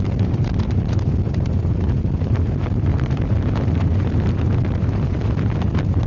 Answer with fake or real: fake